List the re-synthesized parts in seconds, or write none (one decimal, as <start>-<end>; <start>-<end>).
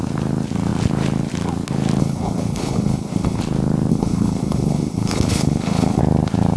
2.0-3.4; 3.9-6.0